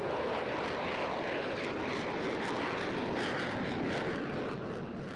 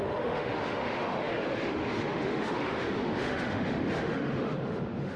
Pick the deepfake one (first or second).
second